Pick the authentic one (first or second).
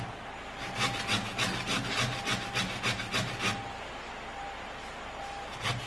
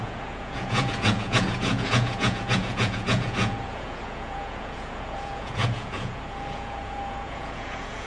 first